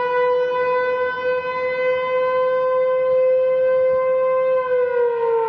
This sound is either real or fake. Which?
real